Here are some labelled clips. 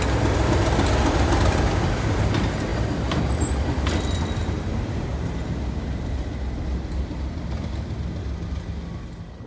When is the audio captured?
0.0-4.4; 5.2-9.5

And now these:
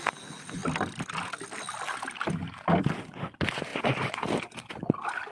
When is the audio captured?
0.0-0.6; 2.3-5.3

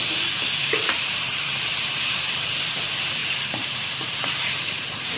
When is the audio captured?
0.0-0.6; 2.7-3.2

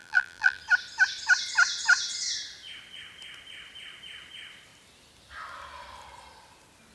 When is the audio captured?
0.6-6.9